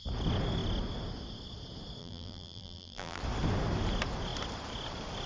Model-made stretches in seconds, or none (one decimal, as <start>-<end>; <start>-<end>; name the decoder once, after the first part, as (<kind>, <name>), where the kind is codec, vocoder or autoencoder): 2.0-3.2 (vocoder, BigVGAN v2)